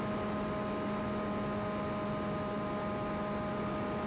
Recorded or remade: recorded